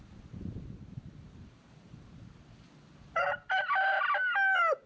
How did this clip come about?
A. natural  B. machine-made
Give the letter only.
A